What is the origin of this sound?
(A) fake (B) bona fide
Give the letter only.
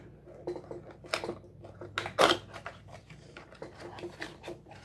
B